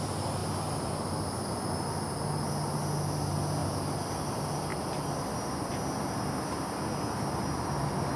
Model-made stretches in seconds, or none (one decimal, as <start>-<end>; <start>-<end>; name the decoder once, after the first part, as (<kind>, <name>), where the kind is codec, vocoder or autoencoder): none

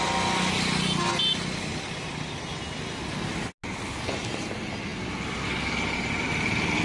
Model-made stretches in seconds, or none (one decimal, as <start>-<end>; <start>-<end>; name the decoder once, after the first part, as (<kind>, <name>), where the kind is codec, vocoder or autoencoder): none

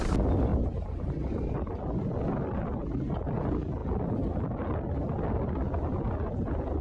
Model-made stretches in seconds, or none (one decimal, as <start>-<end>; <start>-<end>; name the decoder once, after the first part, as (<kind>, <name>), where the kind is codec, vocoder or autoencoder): 0.5-1.8 (vocoder, BigVGAN v2)